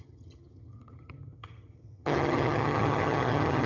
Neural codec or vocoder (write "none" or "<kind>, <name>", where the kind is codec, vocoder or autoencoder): vocoder, HiFi-GAN